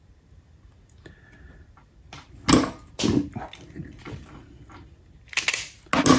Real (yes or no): yes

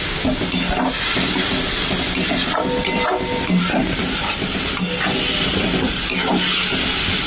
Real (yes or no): yes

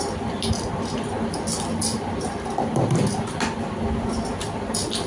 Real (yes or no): yes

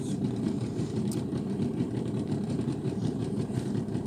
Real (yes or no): no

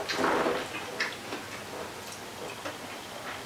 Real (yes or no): yes